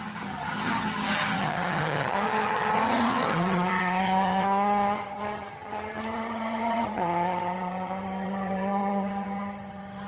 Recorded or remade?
remade